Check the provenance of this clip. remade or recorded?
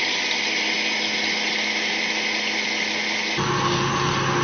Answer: recorded